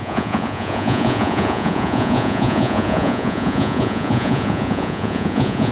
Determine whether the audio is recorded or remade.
remade